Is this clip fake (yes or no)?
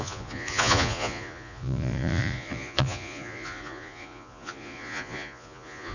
yes